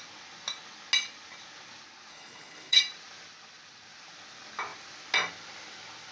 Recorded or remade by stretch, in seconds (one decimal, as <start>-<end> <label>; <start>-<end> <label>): 0.0-2.1 recorded; 2.1-2.8 remade; 2.8-6.1 recorded